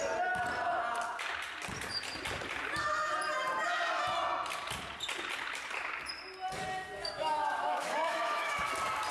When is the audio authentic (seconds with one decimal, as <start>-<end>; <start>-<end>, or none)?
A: 0.0-7.0; 8.7-9.1